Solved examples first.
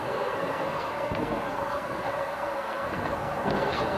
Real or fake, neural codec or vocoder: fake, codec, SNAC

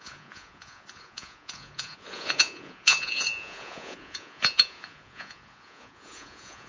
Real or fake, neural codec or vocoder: fake, vocoder, Vocos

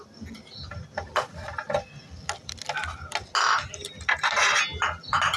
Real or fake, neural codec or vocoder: real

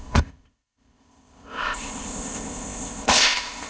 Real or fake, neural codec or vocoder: fake, codec, ZipCodec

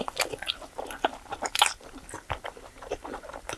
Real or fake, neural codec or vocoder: real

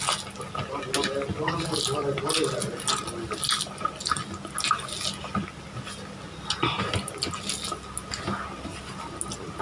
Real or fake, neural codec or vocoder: real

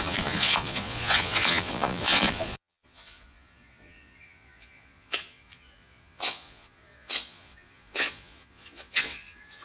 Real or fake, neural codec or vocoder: fake, vocoder, Vocos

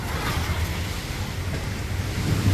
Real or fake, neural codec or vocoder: real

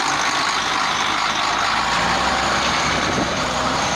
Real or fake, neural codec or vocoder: real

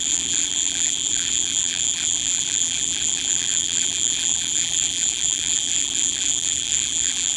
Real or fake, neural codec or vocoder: fake, vocoder, BigVGAN v2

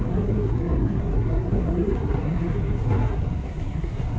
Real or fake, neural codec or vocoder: fake, codec, SNAC